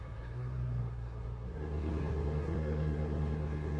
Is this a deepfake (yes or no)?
yes